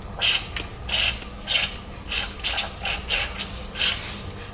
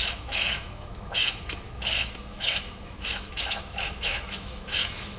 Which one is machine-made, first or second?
second